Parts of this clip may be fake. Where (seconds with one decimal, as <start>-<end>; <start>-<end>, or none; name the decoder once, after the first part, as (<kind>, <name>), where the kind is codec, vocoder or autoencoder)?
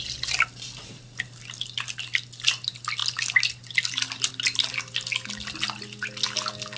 none